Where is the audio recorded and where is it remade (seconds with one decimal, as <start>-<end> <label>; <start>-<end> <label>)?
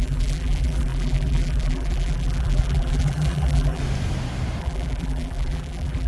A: 0.0-3.8 remade; 3.8-4.6 recorded; 4.6-6.1 remade